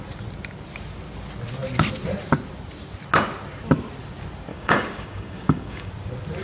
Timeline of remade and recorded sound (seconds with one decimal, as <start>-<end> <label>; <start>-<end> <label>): 0.0-4.5 recorded; 4.5-5.9 remade; 5.9-6.4 recorded